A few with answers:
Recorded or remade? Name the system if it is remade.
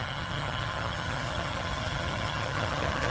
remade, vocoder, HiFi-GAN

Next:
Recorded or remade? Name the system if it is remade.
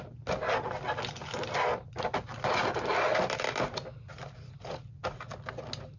recorded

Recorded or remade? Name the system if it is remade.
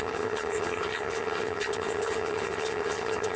remade, vocoder, HiFi-GAN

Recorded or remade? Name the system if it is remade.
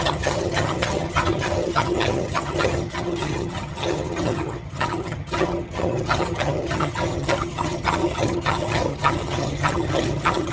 remade, vocoder, HiFi-GAN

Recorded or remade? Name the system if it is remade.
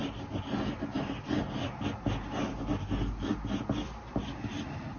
recorded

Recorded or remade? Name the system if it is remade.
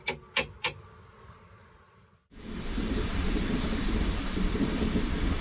recorded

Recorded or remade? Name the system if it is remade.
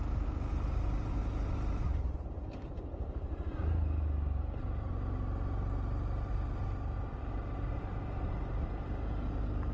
recorded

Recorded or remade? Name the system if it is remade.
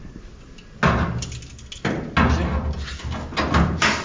recorded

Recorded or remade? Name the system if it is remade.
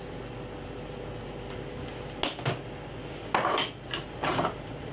recorded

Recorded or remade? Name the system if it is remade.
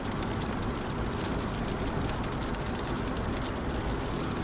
recorded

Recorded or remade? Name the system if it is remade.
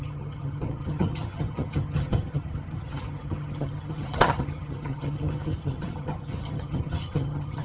remade, vocoder, HiFi-GAN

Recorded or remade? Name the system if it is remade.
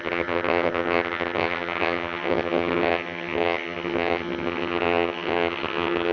remade, vocoder, HiFi-GAN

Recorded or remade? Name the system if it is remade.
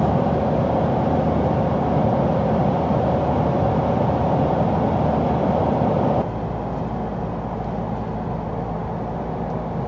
recorded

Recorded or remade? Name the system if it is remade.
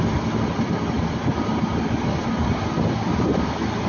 recorded